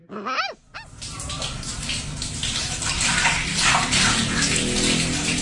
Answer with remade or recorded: recorded